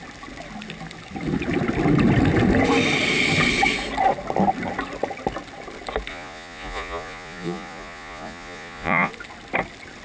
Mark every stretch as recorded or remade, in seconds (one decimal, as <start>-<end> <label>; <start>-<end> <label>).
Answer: 0.0-6.1 recorded; 6.1-9.1 remade; 9.1-10.0 recorded